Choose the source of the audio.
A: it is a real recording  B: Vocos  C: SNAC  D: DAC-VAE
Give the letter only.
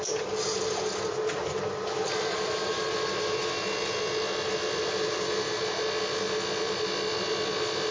A